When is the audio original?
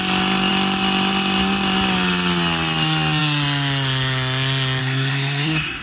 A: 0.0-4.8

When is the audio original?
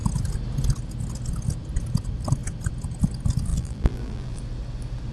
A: 0.0-3.5; 4.4-5.1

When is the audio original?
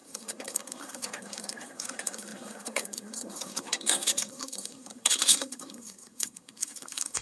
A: none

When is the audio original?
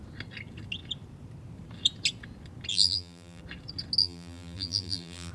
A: 0.0-2.7; 3.4-4.0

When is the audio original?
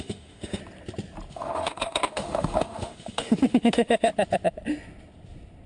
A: 0.6-1.3; 4.1-5.7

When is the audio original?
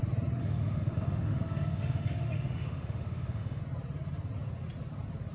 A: 0.0-0.4; 3.6-5.3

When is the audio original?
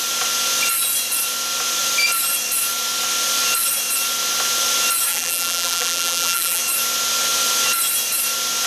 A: 0.0-5.1; 6.6-8.7